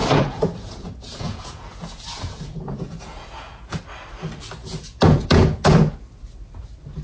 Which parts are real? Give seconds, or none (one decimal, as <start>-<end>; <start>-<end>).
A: 3.8-4.6; 5.9-7.0